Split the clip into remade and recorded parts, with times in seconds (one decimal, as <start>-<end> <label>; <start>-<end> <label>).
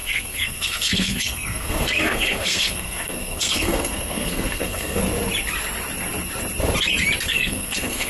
0.0-5.0 remade; 5.0-7.2 recorded; 7.2-8.1 remade